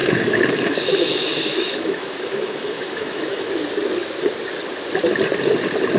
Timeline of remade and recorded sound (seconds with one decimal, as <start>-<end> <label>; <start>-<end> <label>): 0.0-3.5 remade; 3.5-6.0 recorded